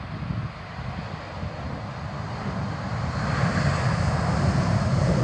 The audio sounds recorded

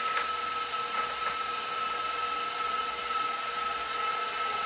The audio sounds recorded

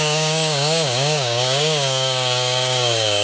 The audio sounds remade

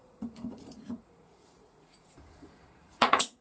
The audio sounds remade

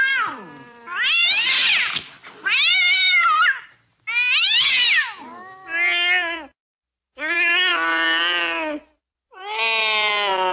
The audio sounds recorded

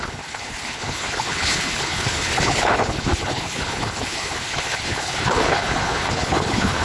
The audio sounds remade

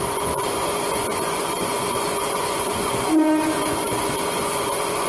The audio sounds remade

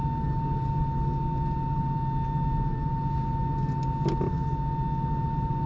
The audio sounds recorded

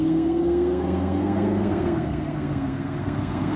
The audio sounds remade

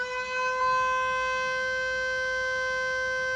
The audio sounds recorded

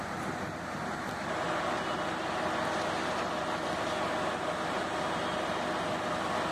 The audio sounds recorded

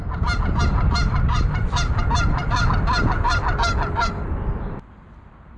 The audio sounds recorded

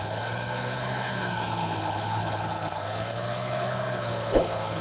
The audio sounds remade